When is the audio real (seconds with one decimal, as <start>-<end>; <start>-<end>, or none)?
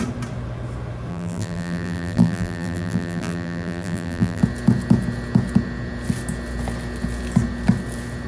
0.0-1.1; 4.4-8.3